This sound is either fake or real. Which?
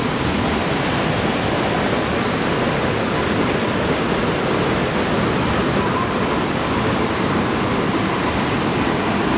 real